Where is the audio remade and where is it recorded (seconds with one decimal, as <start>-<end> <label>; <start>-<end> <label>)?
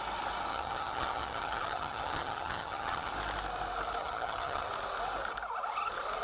0.0-0.5 recorded; 0.5-3.1 remade; 3.1-4.0 recorded; 4.0-4.7 remade; 4.7-6.2 recorded